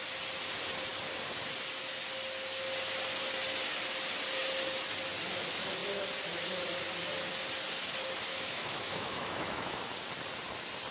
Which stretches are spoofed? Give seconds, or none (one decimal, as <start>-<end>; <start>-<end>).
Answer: 8.3-9.8